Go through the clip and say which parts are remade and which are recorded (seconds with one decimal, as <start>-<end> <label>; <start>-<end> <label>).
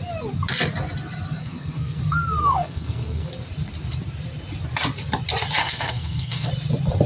0.0-1.4 recorded; 1.4-2.0 remade; 2.0-2.4 recorded; 2.4-3.3 remade; 3.3-5.6 recorded; 5.6-6.5 remade; 6.5-7.1 recorded